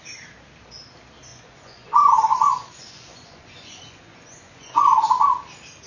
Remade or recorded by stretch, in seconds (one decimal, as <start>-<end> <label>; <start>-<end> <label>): 0.0-1.3 recorded; 1.3-4.8 remade; 4.8-5.9 recorded